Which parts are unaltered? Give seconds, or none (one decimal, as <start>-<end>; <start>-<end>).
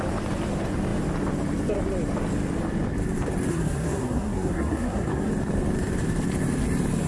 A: 0.0-3.5; 5.3-7.1